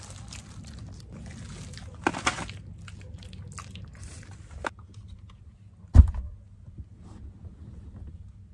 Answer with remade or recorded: recorded